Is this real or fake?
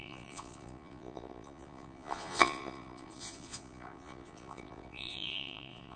fake